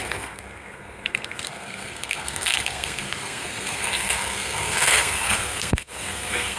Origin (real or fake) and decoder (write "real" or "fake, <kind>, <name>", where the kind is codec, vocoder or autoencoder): fake, codec, SNAC